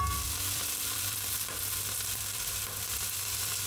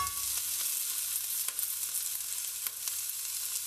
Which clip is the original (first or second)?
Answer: second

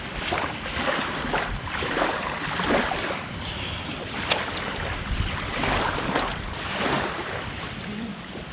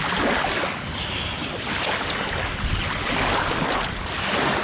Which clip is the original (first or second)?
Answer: second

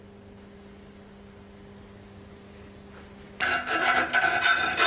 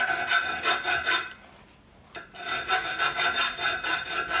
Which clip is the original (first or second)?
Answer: second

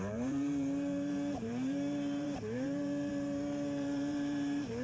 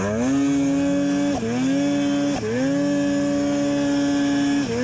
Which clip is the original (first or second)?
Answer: second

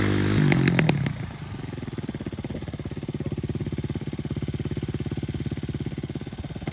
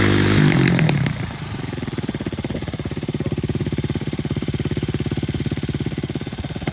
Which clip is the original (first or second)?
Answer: first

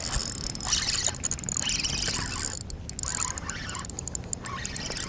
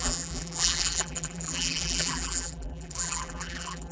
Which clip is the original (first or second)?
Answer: first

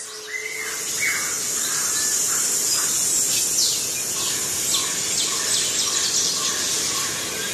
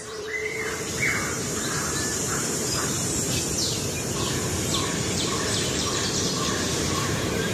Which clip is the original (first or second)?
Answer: first